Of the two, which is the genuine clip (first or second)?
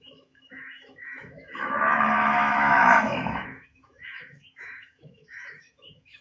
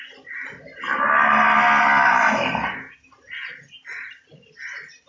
second